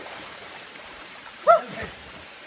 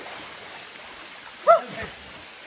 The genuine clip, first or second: second